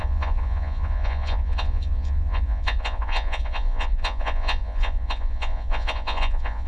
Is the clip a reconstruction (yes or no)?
yes